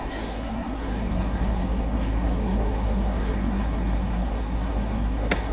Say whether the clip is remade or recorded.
remade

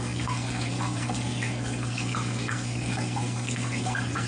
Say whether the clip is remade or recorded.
remade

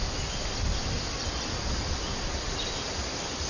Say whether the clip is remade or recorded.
recorded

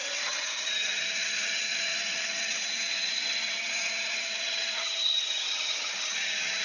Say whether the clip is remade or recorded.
remade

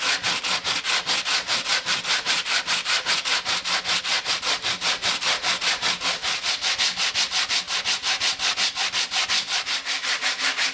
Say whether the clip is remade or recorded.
recorded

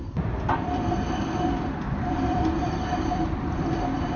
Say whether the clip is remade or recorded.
remade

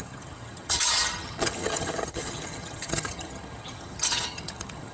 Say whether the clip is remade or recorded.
remade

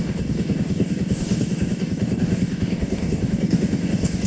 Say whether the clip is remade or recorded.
remade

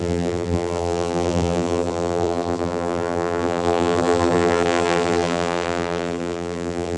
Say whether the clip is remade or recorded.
remade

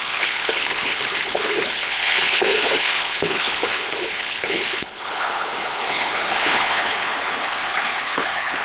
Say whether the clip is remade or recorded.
remade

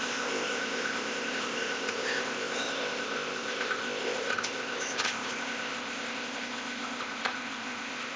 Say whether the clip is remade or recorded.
remade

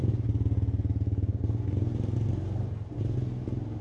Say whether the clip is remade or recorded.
recorded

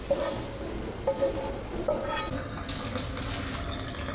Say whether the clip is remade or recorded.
recorded